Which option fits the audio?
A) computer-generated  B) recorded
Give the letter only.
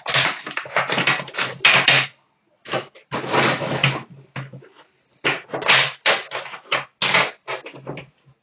B